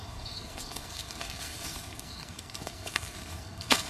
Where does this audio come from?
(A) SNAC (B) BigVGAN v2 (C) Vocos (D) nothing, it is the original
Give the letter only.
A